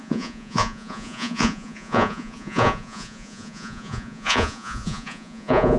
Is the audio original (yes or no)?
no